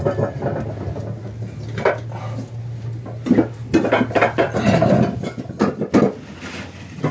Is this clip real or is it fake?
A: real